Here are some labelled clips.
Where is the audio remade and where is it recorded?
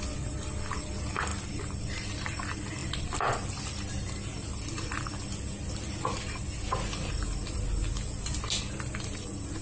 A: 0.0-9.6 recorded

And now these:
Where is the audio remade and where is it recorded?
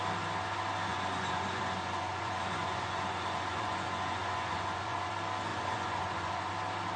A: 0.0-0.9 recorded; 0.9-5.1 remade; 5.1-5.5 recorded; 5.5-6.5 remade; 6.5-7.0 recorded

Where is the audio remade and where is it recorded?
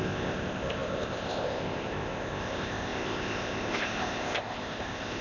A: 0.0-5.2 remade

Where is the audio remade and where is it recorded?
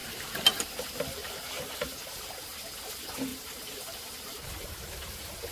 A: 0.0-0.6 remade; 0.6-1.2 recorded; 1.2-2.4 remade; 2.4-3.3 recorded; 3.3-4.7 remade; 4.7-5.5 recorded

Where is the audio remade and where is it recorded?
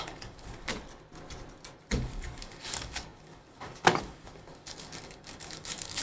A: 0.0-0.7 remade; 0.7-1.9 recorded; 1.9-6.0 remade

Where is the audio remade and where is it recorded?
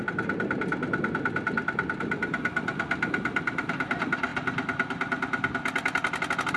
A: 0.0-6.6 recorded